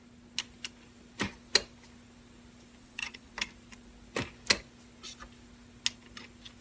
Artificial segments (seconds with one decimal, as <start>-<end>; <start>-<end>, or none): 2.8-3.3